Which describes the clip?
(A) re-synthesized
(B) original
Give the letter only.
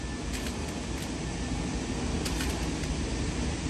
B